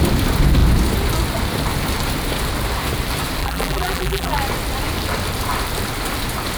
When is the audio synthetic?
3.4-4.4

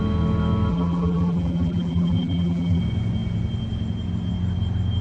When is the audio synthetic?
0.7-2.8

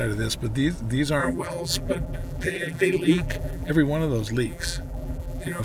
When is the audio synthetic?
1.2-3.7; 4.5-5.6